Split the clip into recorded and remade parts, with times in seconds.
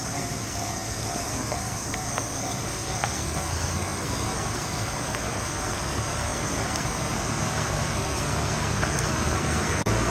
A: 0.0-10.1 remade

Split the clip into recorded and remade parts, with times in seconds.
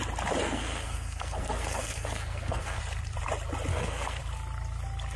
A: 0.0-0.4 recorded; 0.4-2.8 remade; 2.8-3.7 recorded; 3.7-4.2 remade; 4.2-5.2 recorded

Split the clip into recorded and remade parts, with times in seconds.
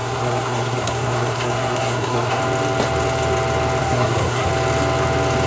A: 0.0-2.4 remade; 2.4-3.8 recorded; 3.8-4.5 remade; 4.5-5.5 recorded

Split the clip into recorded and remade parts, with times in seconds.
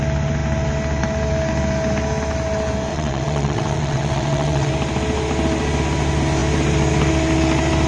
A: 0.0-2.9 recorded; 2.9-4.7 remade; 4.7-7.9 recorded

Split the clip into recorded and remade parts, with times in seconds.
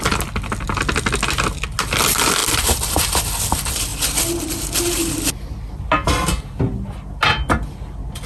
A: 0.0-2.4 recorded; 2.4-3.0 remade; 3.0-3.9 recorded; 3.9-4.5 remade; 4.5-8.3 recorded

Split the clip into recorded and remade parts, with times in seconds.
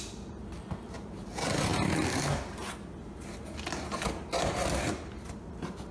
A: 0.0-5.9 recorded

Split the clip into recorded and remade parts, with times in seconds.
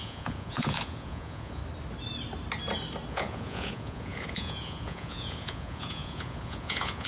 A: 0.0-1.6 remade; 1.6-3.1 recorded; 3.1-7.1 remade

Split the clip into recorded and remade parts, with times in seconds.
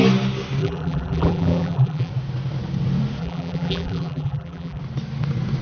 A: 0.0-0.6 recorded; 0.6-2.1 remade; 2.1-3.2 recorded; 3.2-4.8 remade; 4.8-5.6 recorded